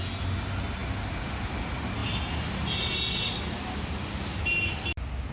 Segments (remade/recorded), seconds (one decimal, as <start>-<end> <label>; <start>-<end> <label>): 0.0-5.3 recorded